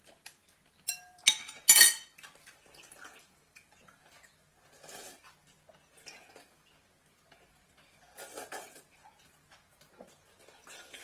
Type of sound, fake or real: real